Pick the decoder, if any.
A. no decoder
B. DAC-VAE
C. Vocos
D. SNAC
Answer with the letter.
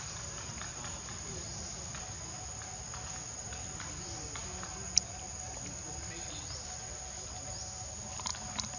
A